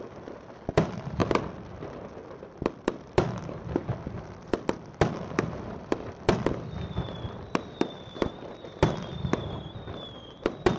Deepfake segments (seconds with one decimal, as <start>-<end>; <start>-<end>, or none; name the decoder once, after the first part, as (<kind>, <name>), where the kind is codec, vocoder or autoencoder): 0.0-1.2 (vocoder, BigVGAN v2); 2.4-3.8; 4.4-10.8